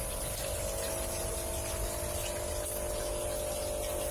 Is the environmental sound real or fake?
real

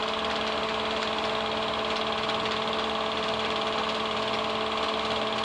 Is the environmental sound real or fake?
real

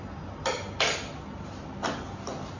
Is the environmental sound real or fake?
real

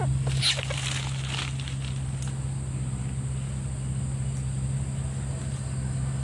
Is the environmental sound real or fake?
real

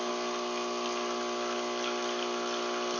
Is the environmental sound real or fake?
real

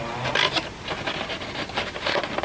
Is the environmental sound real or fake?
real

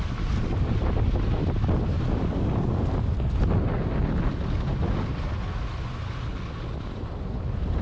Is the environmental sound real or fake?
real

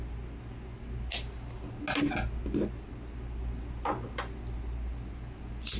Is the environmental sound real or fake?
real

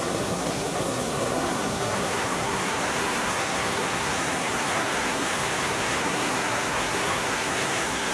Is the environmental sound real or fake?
fake